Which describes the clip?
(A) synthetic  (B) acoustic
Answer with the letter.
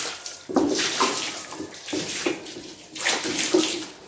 B